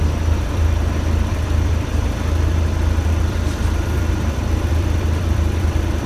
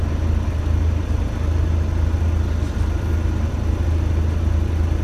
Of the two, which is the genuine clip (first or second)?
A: second